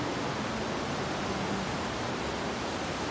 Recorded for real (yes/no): yes